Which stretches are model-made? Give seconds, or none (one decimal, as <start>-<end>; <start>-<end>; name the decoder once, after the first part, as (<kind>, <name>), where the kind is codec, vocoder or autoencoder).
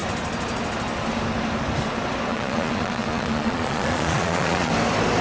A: 2.3-4.7 (vocoder, Vocos)